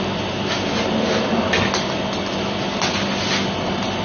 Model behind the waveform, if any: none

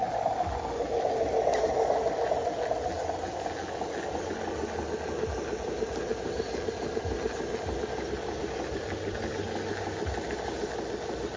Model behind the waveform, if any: none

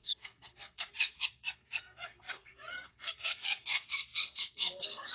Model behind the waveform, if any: codec, SNAC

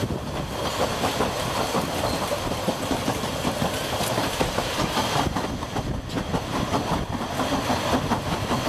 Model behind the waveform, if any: none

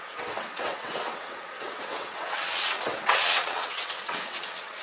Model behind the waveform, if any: vocoder, WaveNeXt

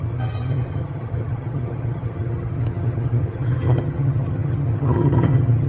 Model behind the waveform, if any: vocoder, HiFi-GAN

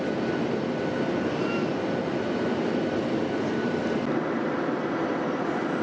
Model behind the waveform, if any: none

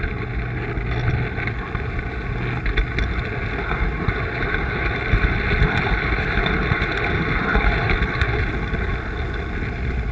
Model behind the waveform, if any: none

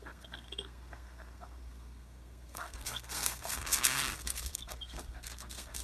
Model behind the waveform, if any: codec, SNAC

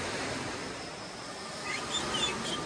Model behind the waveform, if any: none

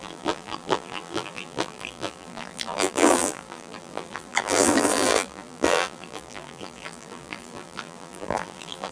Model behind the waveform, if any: vocoder, BigVGAN v2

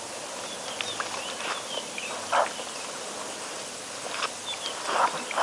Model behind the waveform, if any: none